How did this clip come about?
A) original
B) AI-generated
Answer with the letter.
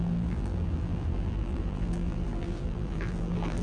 B